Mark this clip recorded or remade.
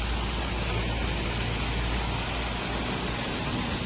recorded